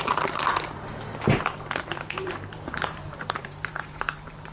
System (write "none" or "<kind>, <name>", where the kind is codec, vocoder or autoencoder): vocoder, BigVGAN v2